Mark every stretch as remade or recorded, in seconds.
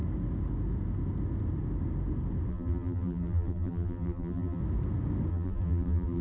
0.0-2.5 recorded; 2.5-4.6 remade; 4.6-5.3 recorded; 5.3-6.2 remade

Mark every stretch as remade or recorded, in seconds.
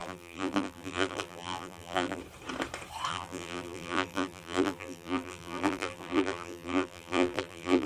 0.0-2.2 remade; 2.2-3.1 recorded; 3.1-7.9 remade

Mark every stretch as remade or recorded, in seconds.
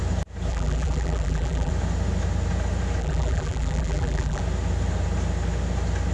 0.0-0.5 recorded; 0.5-1.7 remade; 1.7-3.0 recorded; 3.0-4.4 remade; 4.4-6.1 recorded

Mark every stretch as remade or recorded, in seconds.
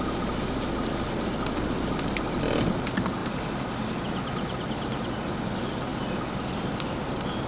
0.0-3.2 recorded; 3.2-3.7 remade; 3.7-7.5 recorded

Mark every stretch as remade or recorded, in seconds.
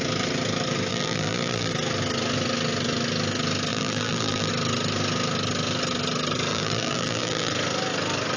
0.0-0.9 recorded; 0.9-1.7 remade; 1.7-3.7 recorded; 3.7-4.5 remade; 4.5-6.5 recorded; 6.5-7.5 remade; 7.5-8.4 recorded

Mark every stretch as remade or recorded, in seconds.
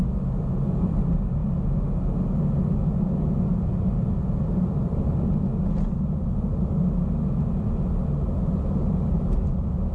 0.0-0.8 recorded; 0.8-1.4 remade; 1.4-2.9 recorded; 2.9-5.5 remade; 5.5-8.2 recorded; 8.2-9.9 remade